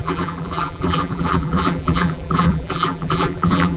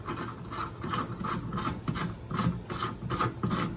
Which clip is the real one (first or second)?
second